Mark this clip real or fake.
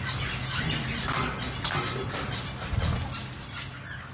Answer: real